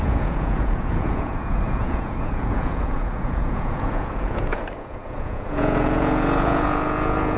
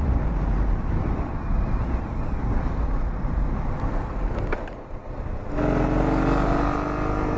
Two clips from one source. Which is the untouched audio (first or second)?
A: second